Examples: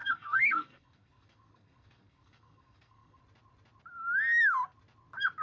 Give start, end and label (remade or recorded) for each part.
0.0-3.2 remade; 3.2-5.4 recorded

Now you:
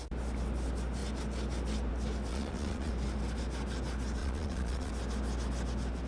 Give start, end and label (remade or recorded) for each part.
0.0-2.3 recorded; 2.3-2.9 remade; 2.9-4.2 recorded; 4.2-4.9 remade; 4.9-6.1 recorded